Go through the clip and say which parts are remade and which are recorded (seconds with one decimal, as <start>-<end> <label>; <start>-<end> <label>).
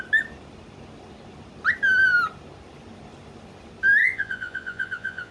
0.0-4.0 recorded; 4.0-5.3 remade